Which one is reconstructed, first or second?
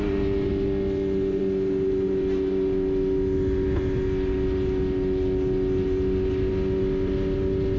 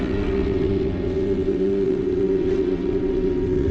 second